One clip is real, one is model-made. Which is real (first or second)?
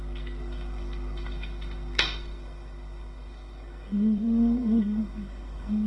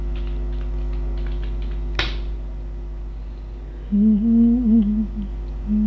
second